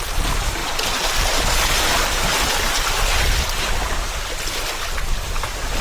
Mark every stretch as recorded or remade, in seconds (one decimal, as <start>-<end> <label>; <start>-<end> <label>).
0.0-5.8 recorded